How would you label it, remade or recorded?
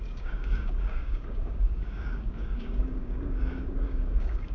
remade